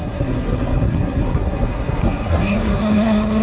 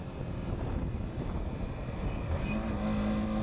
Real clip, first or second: second